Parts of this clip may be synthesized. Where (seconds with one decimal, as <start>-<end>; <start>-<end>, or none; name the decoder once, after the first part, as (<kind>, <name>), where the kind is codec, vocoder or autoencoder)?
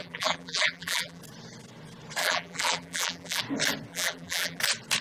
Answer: 0.0-1.2 (vocoder, BigVGAN v2); 2.2-3.4; 3.9-4.6